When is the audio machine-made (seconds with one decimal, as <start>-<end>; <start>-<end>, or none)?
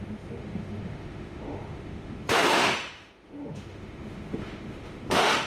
0.0-5.5